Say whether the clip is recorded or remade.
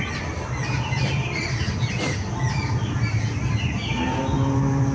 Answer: recorded